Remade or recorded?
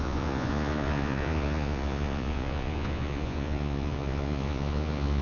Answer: remade